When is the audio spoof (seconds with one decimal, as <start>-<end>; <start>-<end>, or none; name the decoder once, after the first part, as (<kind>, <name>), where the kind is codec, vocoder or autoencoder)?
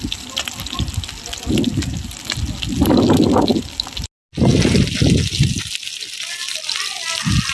none